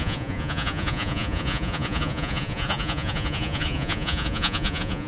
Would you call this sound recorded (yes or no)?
no